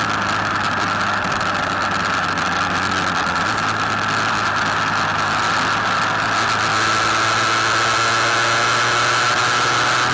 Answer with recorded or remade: recorded